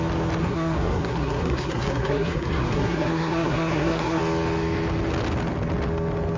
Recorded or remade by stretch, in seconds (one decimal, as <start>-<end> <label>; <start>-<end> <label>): 0.0-0.4 recorded; 0.4-4.2 remade; 4.2-6.4 recorded